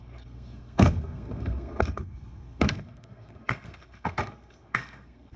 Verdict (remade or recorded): remade